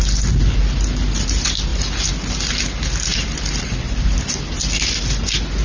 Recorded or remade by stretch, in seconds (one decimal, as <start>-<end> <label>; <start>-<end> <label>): 0.0-3.1 recorded; 3.1-4.4 remade; 4.4-5.6 recorded